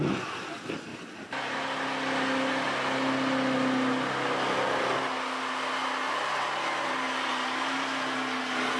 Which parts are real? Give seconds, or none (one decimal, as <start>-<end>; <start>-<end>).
0.0-8.8